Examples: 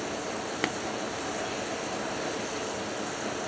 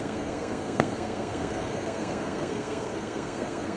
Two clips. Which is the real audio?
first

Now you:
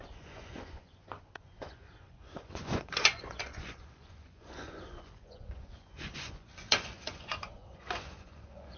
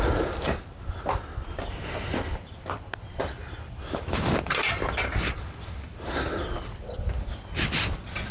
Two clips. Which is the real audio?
second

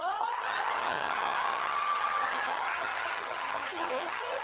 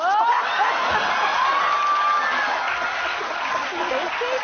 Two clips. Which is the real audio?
second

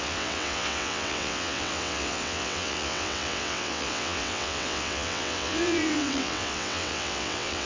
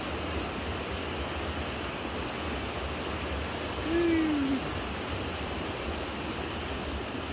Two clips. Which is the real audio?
second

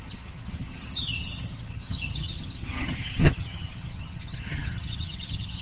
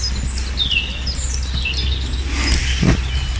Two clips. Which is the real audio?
second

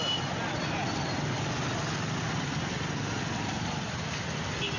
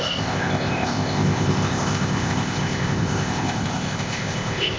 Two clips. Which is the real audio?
first